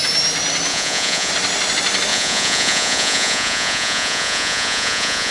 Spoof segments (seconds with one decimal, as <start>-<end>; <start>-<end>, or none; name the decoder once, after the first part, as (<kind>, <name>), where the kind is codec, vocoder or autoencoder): 0.7-1.3 (vocoder, Vocos); 2.1-5.3